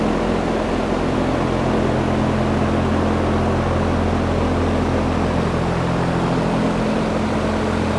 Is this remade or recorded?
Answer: recorded